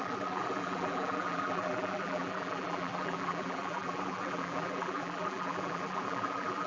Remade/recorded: remade